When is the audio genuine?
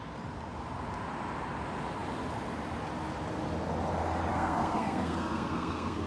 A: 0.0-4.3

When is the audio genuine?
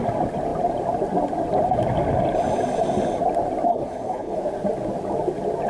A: 0.0-3.7; 4.4-5.7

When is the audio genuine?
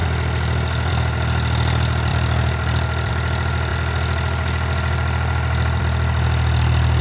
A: 0.0-2.1; 3.1-7.0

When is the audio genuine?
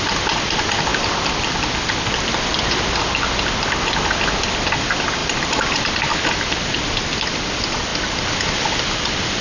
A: 0.0-5.2; 5.9-9.4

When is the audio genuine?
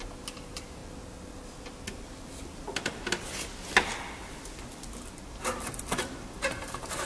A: 0.8-5.1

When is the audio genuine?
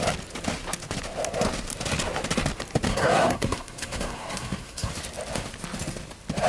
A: 0.0-2.9; 4.9-6.5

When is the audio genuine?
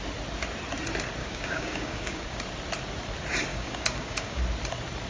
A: 0.0-1.2; 2.4-3.5; 4.4-5.1